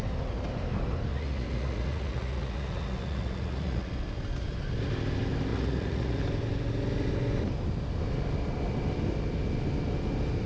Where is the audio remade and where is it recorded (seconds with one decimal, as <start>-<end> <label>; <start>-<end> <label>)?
0.0-1.1 recorded; 1.1-3.9 remade; 3.9-5.5 recorded; 5.5-6.2 remade; 6.2-10.5 recorded